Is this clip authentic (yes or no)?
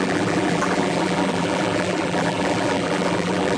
no